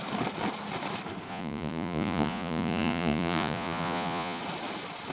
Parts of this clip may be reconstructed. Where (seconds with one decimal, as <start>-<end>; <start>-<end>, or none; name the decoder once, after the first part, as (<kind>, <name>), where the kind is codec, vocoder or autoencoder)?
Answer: 1.3-4.4 (vocoder, Vocos)